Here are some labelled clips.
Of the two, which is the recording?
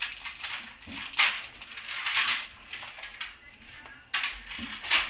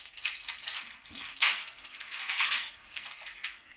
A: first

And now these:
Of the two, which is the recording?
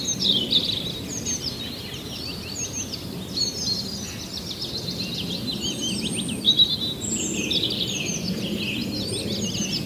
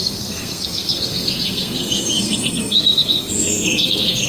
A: first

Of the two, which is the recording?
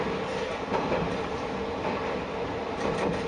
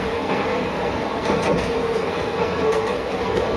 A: first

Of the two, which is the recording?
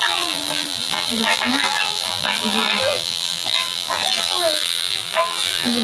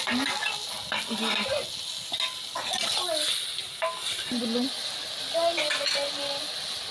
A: second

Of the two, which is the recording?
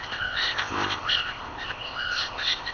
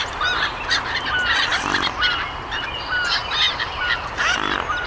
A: second